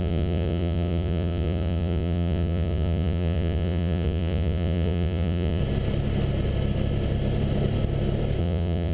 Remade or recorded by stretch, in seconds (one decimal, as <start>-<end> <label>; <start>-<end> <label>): 0.0-5.6 remade; 5.6-8.4 recorded; 8.4-8.9 remade